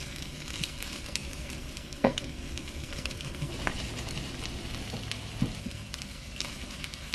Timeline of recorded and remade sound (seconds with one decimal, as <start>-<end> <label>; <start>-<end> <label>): 0.0-3.5 remade; 3.5-5.6 recorded; 5.6-7.1 remade